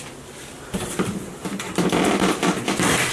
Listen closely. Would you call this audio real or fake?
fake